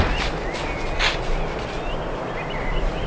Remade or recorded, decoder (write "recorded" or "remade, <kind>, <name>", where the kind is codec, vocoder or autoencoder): recorded